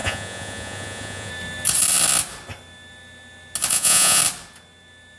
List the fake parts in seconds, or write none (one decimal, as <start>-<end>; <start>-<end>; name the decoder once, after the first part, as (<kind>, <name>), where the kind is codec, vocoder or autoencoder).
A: 0.0-1.3 (vocoder, Vocos); 3.7-4.2